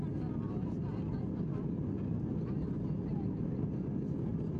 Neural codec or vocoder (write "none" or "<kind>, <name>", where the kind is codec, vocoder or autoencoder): none